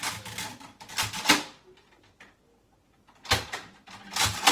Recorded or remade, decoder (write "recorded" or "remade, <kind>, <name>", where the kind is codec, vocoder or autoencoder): recorded